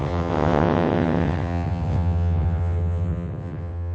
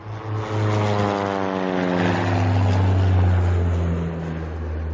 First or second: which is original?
second